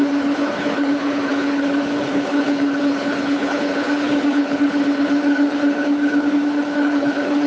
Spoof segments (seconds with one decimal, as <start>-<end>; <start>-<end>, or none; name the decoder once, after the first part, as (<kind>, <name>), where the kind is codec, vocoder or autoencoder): 0.0-7.5 (codec, HILCodec)